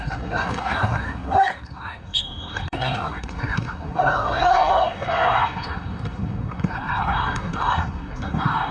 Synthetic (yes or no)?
yes